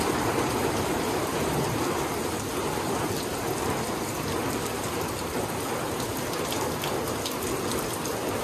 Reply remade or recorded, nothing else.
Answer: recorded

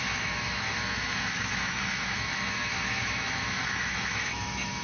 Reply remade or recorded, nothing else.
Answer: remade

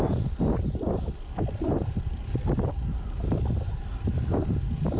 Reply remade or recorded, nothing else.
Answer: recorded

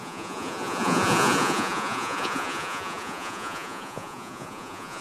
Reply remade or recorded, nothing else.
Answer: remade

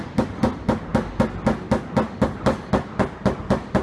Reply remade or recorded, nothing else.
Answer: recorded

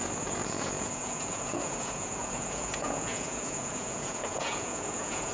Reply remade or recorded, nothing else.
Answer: remade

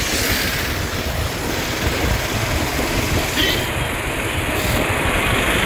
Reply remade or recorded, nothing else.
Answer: recorded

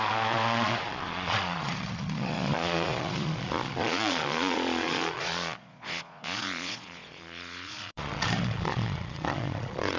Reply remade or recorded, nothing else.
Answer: remade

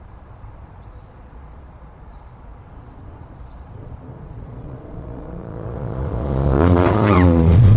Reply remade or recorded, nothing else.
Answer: remade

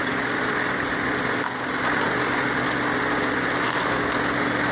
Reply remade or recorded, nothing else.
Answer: recorded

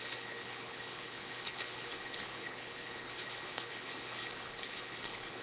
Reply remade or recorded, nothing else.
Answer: remade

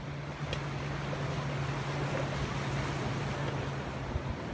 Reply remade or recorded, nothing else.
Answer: recorded